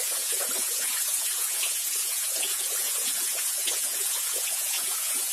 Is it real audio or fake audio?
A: fake